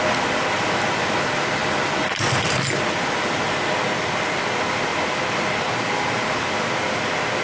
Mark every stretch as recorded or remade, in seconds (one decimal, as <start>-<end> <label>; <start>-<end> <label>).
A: 0.0-7.4 recorded